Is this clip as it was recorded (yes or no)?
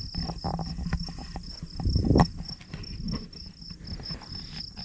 yes